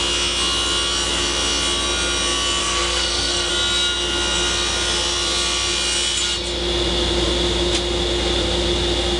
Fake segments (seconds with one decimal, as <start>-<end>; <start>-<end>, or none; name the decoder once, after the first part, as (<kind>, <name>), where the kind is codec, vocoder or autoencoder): 2.6-3.5 (codec, SNAC)